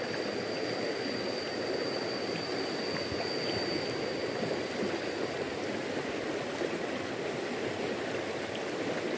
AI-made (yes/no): no